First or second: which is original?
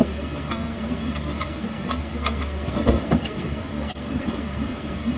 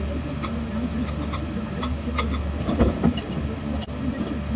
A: second